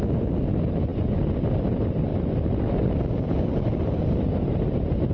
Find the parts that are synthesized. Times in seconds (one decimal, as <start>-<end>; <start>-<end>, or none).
none